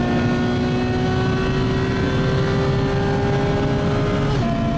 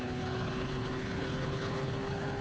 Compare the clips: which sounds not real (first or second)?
second